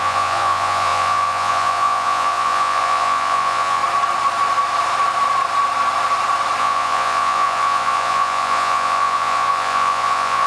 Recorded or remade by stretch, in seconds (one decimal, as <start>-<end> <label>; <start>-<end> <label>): 0.0-3.8 remade; 3.8-6.6 recorded; 6.6-10.5 remade